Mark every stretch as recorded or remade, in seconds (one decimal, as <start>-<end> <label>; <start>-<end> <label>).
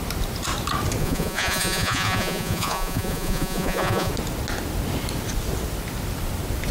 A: 0.0-1.0 recorded; 1.0-4.1 remade; 4.1-6.7 recorded